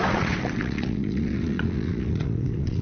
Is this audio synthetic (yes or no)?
yes